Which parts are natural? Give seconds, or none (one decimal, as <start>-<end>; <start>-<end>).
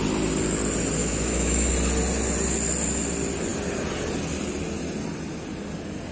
0.0-1.0; 1.7-6.1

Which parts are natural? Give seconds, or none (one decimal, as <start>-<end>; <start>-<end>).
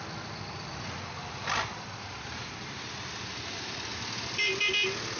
0.0-5.2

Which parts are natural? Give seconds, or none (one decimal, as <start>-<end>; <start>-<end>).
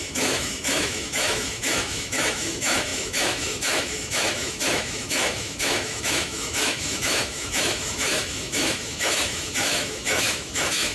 none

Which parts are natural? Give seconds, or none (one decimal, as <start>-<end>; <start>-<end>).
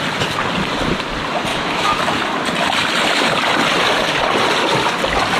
0.0-1.5; 2.0-5.4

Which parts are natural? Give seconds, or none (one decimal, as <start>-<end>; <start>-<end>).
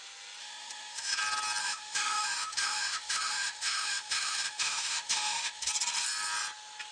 0.0-0.4; 1.2-1.6; 5.7-6.9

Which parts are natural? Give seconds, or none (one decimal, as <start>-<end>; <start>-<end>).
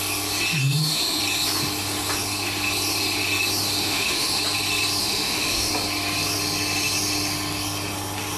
0.0-0.6; 1.2-3.8; 4.4-5.0; 5.7-8.4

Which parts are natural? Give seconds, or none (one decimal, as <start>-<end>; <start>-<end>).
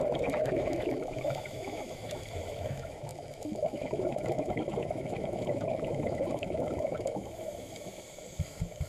none